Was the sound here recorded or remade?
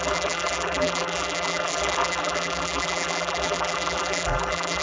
remade